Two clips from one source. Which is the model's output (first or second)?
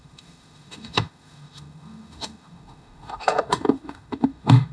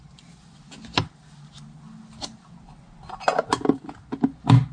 first